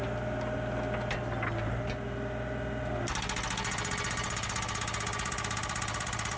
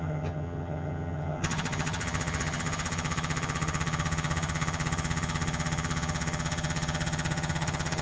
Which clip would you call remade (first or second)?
second